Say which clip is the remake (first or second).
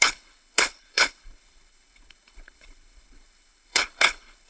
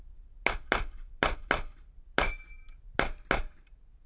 first